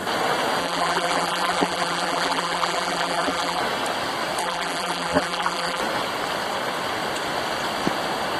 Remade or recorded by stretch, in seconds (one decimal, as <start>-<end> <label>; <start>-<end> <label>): 0.0-0.6 recorded; 0.6-3.6 remade; 3.6-4.4 recorded; 4.4-5.8 remade; 5.8-8.4 recorded